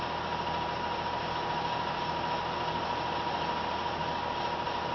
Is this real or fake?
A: real